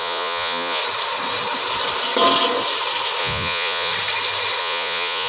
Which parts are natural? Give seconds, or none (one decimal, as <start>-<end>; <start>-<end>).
0.8-3.2; 3.9-4.6